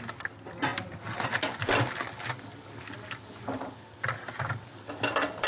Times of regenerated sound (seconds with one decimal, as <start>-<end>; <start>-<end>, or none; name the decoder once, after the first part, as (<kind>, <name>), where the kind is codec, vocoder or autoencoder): none